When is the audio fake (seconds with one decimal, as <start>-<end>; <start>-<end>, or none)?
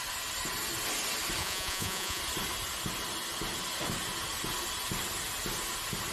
1.4-2.2